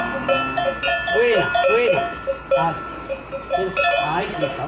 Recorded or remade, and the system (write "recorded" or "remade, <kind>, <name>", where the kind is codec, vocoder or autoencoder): recorded